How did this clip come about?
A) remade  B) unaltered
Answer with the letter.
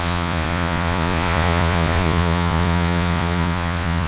A